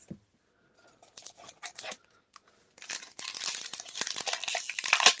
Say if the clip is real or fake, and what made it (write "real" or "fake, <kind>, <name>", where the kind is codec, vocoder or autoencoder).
real